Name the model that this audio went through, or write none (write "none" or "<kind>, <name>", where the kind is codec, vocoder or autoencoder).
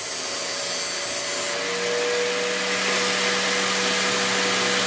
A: none